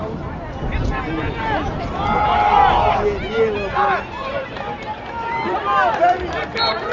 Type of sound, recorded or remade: recorded